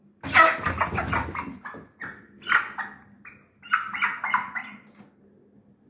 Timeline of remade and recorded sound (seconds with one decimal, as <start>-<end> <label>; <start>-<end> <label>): 0.0-5.9 recorded